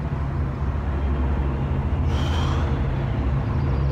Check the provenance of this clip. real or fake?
real